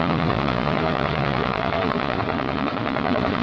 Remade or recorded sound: remade